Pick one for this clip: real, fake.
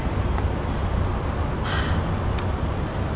real